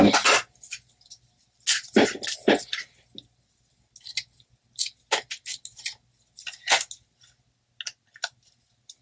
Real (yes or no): yes